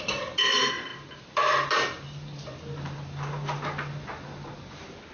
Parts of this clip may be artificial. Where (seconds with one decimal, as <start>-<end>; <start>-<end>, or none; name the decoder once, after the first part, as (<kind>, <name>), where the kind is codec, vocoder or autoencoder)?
none